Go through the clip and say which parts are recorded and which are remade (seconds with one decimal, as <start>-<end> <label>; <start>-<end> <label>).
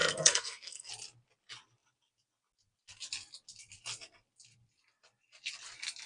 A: 0.0-0.9 remade; 0.9-6.1 recorded